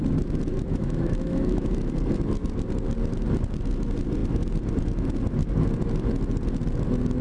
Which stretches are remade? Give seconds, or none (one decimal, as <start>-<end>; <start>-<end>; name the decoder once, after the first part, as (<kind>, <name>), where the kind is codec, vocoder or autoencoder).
0.5-1.9 (autoencoder, DAC-VAE)